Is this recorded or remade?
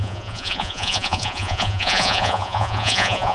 remade